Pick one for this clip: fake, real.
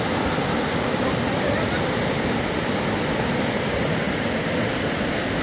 real